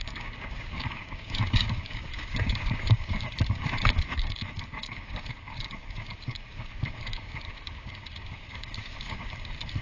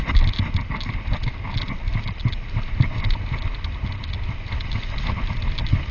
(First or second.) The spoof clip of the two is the first